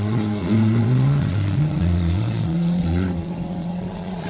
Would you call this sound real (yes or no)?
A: no